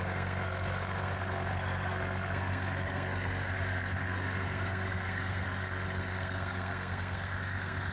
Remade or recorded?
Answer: remade